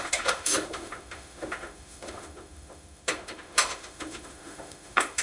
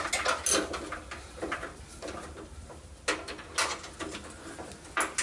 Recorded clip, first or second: second